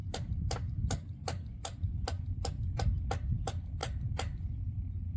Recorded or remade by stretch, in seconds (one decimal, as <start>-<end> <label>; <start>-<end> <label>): 0.0-3.8 recorded; 3.8-4.8 remade; 4.8-5.2 recorded